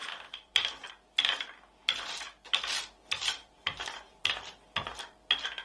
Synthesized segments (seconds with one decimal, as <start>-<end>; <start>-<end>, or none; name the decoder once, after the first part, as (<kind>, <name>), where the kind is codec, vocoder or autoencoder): 0.0-0.9 (vocoder, BigVGAN v2); 3.4-4.2